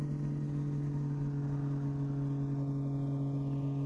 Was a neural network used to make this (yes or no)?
no